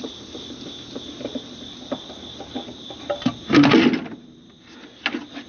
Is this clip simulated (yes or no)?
no